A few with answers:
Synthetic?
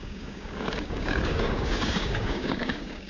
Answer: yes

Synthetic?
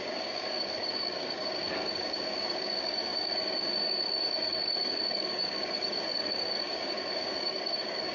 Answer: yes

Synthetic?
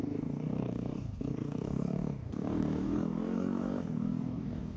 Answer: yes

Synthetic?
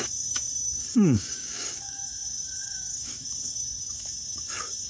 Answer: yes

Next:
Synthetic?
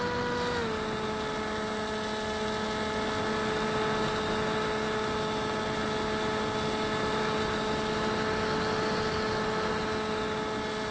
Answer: no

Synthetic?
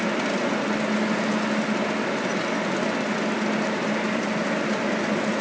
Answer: no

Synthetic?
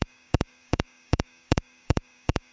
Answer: yes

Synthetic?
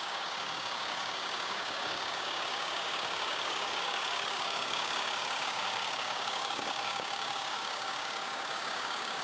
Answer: yes